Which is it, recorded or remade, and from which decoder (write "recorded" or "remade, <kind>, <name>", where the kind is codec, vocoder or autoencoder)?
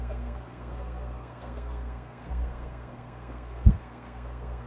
remade, codec, SNAC